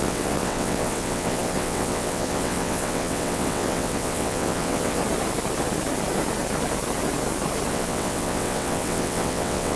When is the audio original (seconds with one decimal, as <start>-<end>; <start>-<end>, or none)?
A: 5.0-7.7